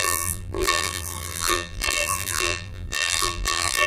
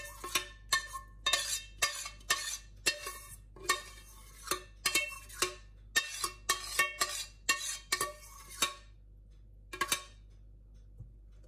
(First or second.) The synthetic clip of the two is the first